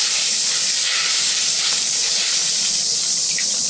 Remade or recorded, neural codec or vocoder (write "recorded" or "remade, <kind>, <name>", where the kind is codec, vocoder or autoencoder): remade, vocoder, BigVGAN v2